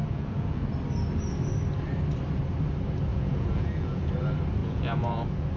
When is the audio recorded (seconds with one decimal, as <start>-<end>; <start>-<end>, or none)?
0.6-3.1; 4.1-4.6